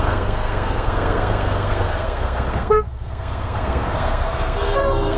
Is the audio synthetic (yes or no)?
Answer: yes